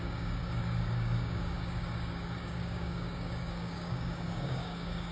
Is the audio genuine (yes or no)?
no